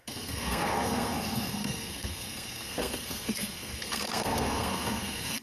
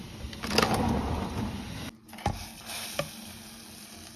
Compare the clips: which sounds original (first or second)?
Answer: second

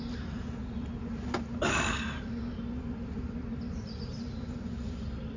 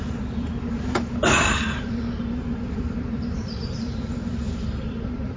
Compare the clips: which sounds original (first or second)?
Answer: first